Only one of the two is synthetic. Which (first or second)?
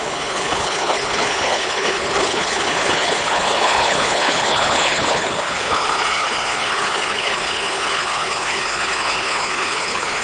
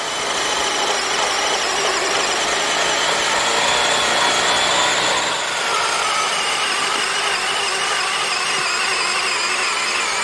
first